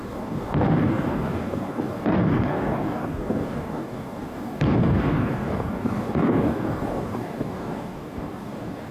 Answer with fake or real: fake